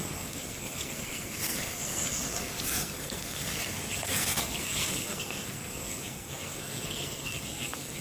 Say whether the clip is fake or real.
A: fake